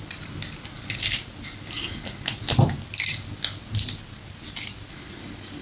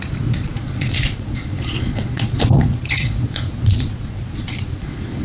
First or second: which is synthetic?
second